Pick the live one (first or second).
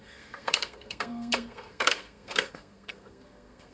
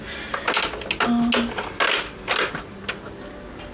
second